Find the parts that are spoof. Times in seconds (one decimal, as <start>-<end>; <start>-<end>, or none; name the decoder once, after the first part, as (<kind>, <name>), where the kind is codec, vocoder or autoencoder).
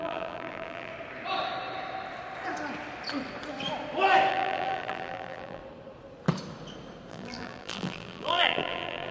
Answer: 0.0-0.9 (vocoder, BigVGAN v2); 4.3-5.6; 7.1-9.1